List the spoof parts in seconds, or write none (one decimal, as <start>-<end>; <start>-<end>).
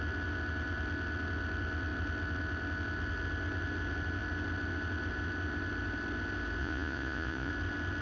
6.6-7.5